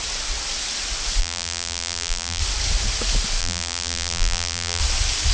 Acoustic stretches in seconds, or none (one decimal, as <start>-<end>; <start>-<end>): 0.0-1.2; 2.4-3.4; 4.8-5.3